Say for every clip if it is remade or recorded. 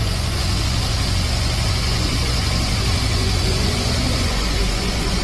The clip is remade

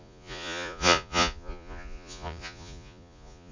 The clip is remade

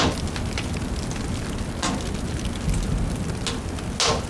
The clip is recorded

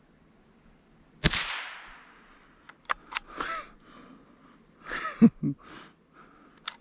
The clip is recorded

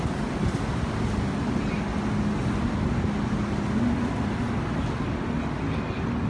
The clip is recorded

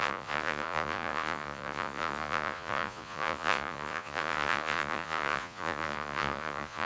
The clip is remade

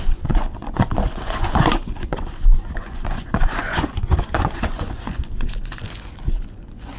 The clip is remade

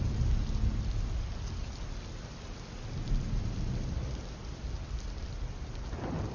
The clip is recorded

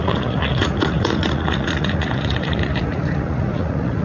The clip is remade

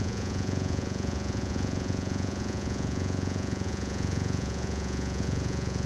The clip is remade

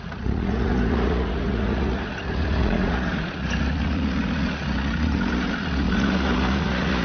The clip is remade